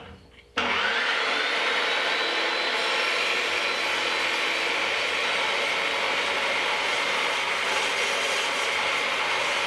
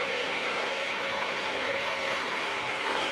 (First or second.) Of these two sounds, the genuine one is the first